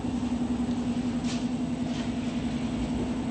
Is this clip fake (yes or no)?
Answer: no